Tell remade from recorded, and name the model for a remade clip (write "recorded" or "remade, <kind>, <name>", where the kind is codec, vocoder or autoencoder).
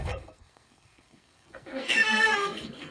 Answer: remade, codec, SNAC